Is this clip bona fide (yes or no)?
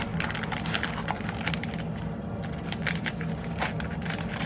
yes